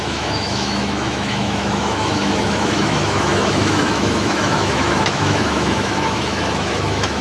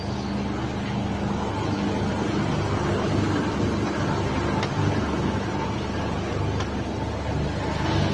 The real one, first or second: second